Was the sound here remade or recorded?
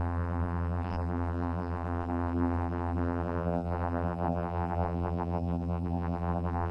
remade